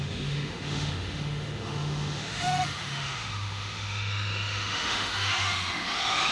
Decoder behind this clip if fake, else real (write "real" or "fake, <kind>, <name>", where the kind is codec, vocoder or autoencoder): fake, autoencoder, DAC-VAE